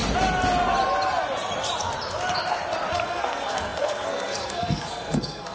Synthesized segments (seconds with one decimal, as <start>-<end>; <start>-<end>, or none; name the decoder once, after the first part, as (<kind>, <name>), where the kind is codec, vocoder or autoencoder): 2.9-5.5 (codec, SNAC)